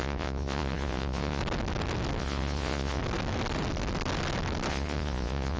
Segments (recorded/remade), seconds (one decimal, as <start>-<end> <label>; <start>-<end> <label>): 0.0-1.4 remade; 1.4-2.2 recorded; 2.2-3.0 remade; 3.0-4.7 recorded; 4.7-5.6 remade